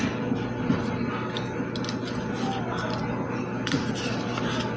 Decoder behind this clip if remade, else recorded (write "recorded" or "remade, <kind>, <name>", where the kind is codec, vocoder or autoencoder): recorded